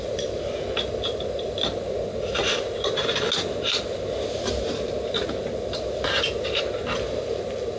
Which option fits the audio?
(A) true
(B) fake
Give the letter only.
A